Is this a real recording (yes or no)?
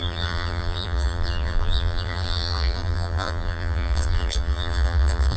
no